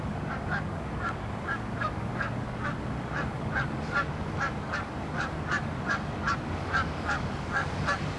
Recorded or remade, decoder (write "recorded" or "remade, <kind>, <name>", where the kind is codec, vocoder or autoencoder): remade, codec, DAC